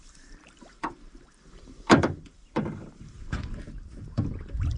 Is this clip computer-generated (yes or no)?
yes